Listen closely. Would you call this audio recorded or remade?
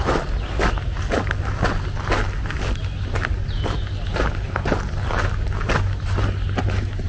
recorded